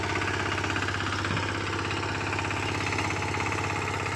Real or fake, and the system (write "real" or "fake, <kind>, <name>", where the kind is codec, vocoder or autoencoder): real